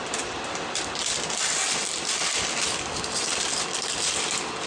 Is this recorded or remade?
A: recorded